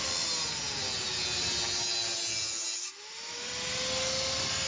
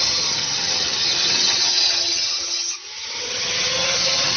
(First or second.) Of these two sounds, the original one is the first